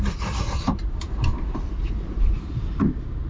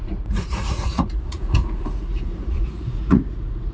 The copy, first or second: second